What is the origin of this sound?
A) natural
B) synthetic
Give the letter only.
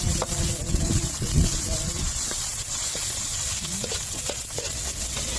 B